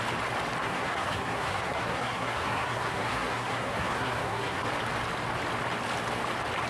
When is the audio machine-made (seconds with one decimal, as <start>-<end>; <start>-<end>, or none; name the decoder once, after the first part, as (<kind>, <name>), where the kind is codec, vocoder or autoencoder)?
0.6-4.6 (codec, SNAC)